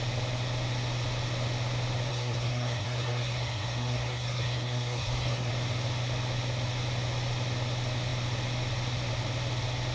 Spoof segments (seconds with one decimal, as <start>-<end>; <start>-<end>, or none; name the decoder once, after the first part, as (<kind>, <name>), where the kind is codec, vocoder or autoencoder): 2.1-5.5 (codec, SNAC)

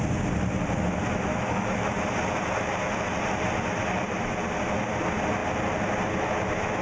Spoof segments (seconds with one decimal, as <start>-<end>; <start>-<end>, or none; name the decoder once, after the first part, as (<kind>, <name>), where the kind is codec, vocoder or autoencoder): 1.3-1.9 (autoencoder, DAC-VAE)

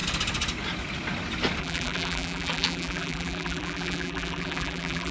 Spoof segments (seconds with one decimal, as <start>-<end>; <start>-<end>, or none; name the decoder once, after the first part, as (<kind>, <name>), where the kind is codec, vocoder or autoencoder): 1.6-5.1 (vocoder, BigVGAN v2)

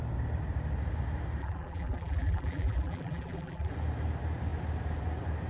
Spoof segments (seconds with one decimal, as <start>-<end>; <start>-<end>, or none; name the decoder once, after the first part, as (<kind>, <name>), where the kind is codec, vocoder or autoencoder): 1.4-3.7 (vocoder, BigVGAN v2)

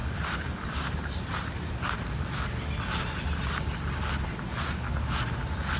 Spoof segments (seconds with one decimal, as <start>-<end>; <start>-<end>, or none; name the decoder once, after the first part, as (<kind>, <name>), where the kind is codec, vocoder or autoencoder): 0.0-1.7 (vocoder, BigVGAN v2)

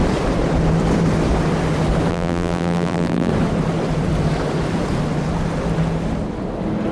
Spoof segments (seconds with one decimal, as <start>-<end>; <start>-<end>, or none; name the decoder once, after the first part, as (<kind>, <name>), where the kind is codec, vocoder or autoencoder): 2.1-3.3 (vocoder, BigVGAN v2)

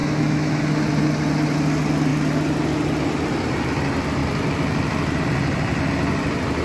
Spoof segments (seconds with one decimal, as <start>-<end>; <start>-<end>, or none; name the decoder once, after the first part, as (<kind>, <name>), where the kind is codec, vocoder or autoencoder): 0.0-0.6 (autoencoder, DAC-VAE)